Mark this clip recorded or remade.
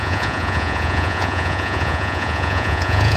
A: remade